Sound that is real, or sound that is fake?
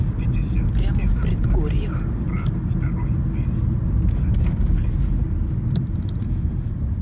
real